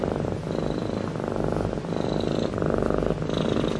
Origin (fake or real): real